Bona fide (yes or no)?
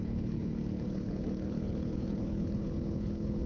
no